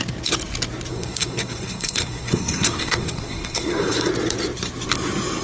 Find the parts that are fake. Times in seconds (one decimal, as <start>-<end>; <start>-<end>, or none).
0.9-4.1